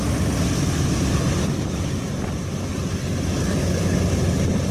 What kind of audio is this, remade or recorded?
recorded